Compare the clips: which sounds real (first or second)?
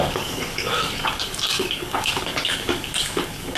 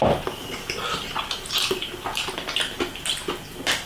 second